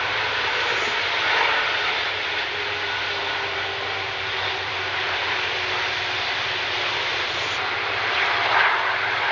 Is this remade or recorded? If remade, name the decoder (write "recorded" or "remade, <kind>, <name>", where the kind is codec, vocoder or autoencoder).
recorded